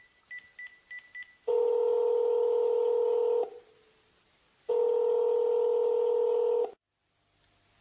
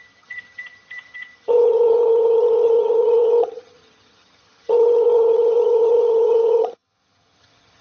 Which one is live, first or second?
first